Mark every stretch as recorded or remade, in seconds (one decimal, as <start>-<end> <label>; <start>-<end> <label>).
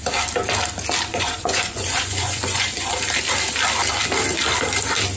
0.0-1.1 recorded; 1.1-2.9 remade; 2.9-5.2 recorded